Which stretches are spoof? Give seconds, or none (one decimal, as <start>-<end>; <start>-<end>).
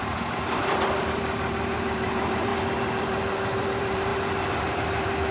0.0-4.1; 4.7-5.3